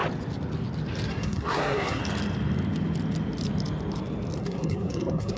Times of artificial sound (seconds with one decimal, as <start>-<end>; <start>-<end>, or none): 1.1-2.0; 4.4-5.4